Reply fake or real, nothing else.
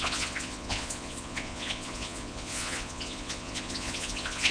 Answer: fake